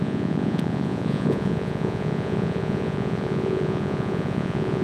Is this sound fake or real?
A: fake